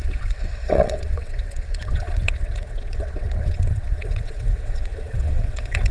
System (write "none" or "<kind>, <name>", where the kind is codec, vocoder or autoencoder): vocoder, WaveNeXt